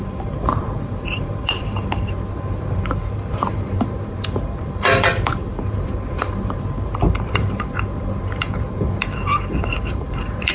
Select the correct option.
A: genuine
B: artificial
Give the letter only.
B